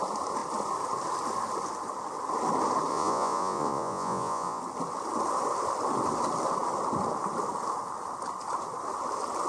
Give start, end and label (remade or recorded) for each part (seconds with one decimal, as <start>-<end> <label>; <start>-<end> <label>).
0.0-2.9 recorded; 2.9-4.6 remade; 4.6-9.5 recorded